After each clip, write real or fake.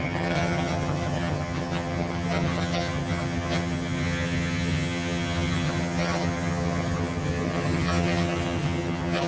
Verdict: fake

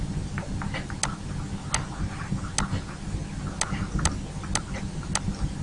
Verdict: real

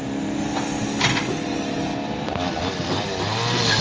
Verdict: real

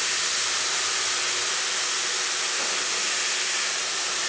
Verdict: real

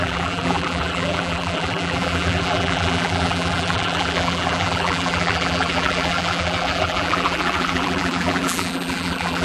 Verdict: fake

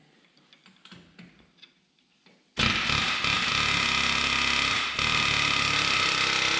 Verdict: real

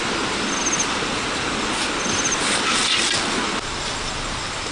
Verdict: real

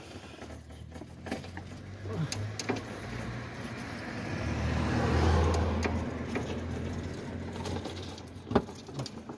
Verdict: real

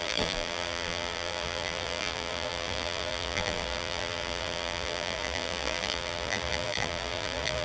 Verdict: fake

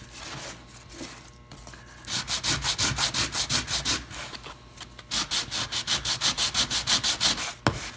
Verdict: real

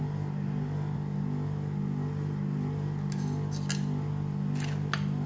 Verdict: real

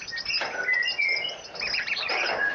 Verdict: real